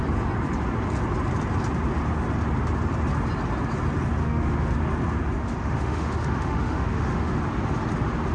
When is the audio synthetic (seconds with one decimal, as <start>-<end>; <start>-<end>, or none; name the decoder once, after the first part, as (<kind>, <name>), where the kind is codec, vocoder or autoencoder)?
4.2-4.7 (autoencoder, DAC-VAE); 5.4-7.4

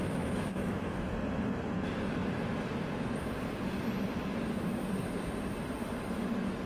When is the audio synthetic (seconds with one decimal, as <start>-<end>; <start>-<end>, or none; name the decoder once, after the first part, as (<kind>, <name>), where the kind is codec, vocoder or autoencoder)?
0.0-1.1 (autoencoder, DAC-VAE)

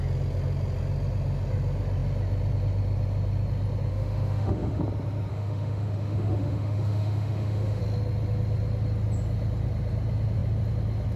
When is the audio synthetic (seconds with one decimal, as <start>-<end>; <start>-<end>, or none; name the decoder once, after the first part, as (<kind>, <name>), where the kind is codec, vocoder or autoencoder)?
3.9-4.8 (autoencoder, DAC-VAE); 5.3-7.8